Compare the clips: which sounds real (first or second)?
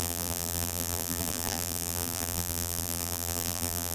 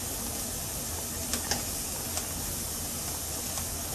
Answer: second